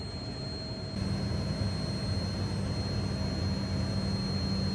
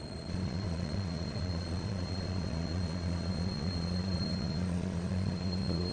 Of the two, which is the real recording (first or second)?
first